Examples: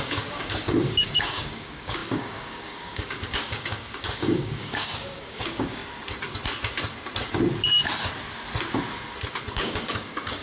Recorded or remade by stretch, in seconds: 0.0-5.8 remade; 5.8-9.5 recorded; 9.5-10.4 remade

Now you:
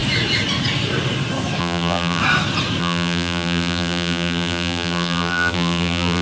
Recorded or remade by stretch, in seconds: 0.0-1.6 recorded; 1.6-2.2 remade; 2.2-2.8 recorded; 2.8-6.2 remade

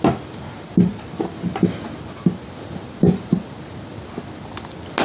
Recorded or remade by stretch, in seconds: 0.0-5.0 recorded

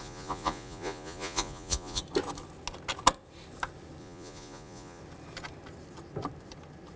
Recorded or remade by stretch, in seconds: 0.0-2.0 remade; 2.0-4.0 recorded; 4.0-5.0 remade; 5.0-7.0 recorded

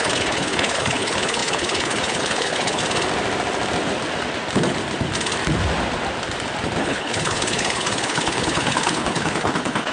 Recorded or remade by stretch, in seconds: 0.0-2.8 remade; 2.8-6.8 recorded; 6.8-9.9 remade

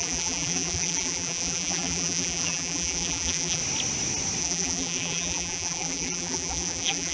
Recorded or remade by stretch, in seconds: 0.0-3.6 remade; 3.6-4.4 recorded; 4.4-7.1 remade

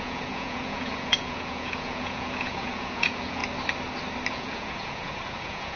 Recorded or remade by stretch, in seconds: 0.0-3.4 remade; 3.4-4.3 recorded; 4.3-5.8 remade